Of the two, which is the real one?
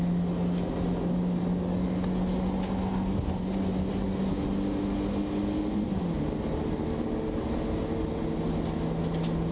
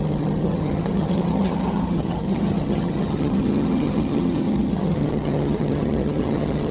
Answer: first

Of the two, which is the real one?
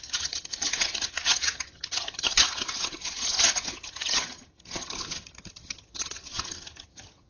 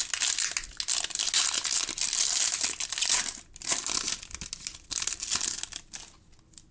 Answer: second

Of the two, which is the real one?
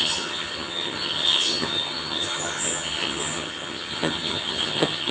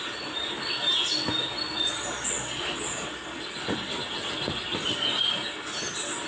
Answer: second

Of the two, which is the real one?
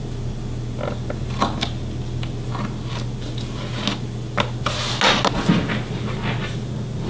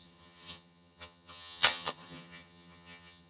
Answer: first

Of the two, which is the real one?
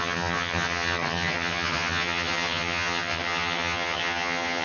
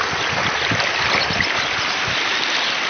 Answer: second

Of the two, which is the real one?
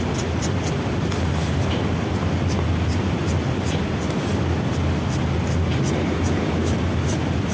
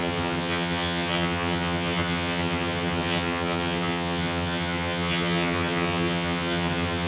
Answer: first